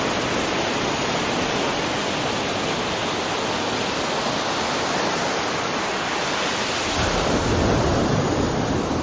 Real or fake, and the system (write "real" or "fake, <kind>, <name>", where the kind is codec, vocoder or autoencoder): real